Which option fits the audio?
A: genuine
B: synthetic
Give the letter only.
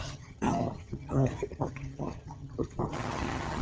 B